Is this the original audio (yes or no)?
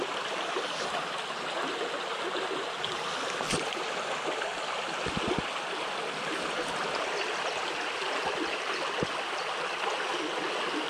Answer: yes